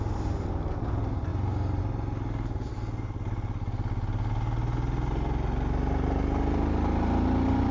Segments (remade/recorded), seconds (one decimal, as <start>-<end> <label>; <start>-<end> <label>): 0.0-7.7 recorded